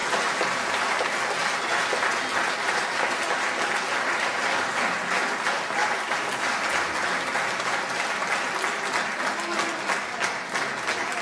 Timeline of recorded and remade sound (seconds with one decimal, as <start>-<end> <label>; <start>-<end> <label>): 0.0-11.2 recorded